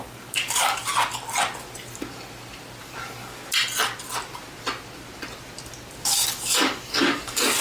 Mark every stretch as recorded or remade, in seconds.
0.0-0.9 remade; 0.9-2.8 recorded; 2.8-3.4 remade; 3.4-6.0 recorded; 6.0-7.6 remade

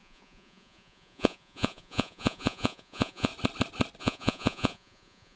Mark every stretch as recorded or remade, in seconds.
0.0-3.3 remade; 3.3-4.0 recorded; 4.0-5.4 remade